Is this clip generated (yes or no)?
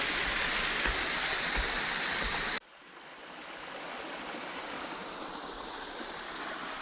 no